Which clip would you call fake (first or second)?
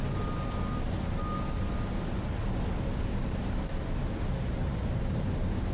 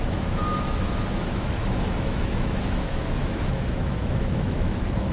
second